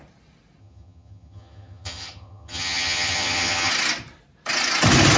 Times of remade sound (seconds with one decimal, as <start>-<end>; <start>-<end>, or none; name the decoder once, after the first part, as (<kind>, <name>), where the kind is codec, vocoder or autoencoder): 0.6-3.7 (vocoder, HiFi-GAN)